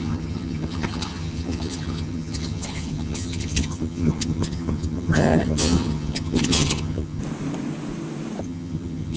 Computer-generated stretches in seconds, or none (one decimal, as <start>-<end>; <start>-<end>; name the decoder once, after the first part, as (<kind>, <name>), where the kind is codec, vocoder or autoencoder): 0.0-7.2 (vocoder, HiFi-GAN); 8.4-9.2